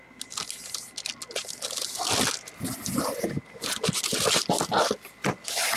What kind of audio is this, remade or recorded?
recorded